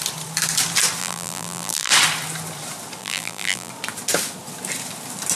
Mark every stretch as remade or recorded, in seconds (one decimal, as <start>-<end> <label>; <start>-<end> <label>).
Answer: 0.0-1.0 recorded; 1.0-1.9 remade; 1.9-3.0 recorded; 3.0-3.7 remade; 3.7-5.3 recorded